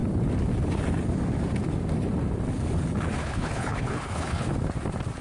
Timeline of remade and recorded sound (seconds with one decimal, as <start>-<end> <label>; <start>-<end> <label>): 0.0-3.2 recorded; 3.2-4.5 remade; 4.5-5.2 recorded